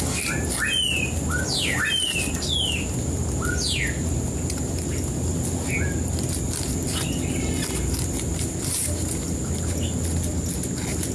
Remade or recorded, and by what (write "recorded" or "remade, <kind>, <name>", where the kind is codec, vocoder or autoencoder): recorded